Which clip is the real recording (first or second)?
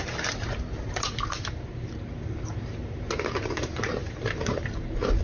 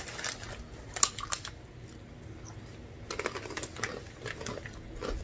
second